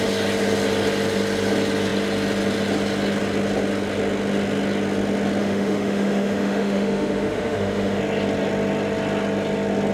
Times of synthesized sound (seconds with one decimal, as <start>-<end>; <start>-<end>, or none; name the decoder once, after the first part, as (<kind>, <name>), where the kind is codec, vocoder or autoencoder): 5.4-8.0 (autoencoder, DAC-VAE)